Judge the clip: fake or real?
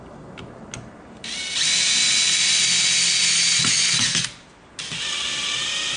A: real